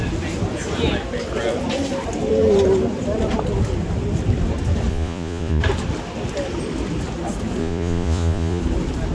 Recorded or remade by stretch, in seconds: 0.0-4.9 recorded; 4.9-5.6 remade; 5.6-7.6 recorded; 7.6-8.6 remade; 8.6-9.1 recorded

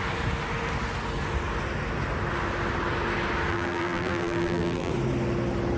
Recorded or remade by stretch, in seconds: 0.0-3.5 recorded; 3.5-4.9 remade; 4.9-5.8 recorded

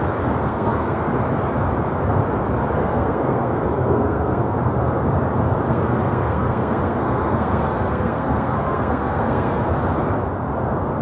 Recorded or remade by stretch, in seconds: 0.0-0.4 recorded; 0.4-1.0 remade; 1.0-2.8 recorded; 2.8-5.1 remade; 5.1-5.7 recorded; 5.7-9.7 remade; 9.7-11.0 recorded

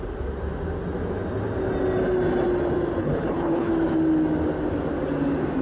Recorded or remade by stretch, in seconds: 0.0-3.0 recorded; 3.0-3.7 remade; 3.7-5.6 recorded

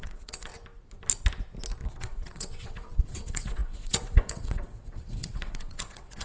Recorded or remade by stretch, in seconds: 0.0-0.5 remade; 0.5-2.0 recorded; 2.0-6.2 remade

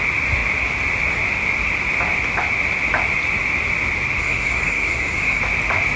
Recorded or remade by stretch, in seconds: 0.0-4.2 recorded; 4.2-5.4 remade; 5.4-6.0 recorded

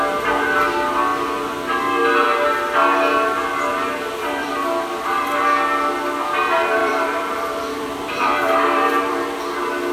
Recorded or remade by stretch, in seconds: 0.0-3.7 recorded; 3.7-4.5 remade; 4.5-6.8 recorded; 6.8-9.4 remade; 9.4-9.9 recorded